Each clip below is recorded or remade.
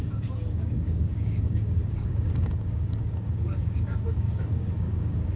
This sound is remade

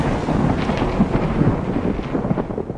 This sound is remade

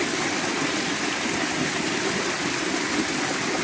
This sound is remade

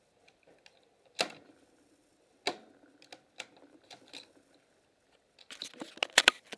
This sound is recorded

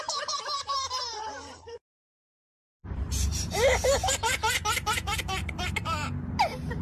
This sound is remade